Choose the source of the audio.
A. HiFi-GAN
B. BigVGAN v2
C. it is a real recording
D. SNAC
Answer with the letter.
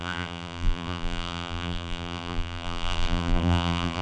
B